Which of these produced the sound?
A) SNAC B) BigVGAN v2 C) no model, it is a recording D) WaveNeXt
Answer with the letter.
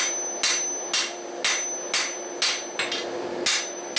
C